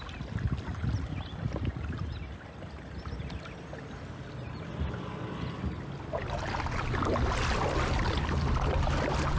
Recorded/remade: recorded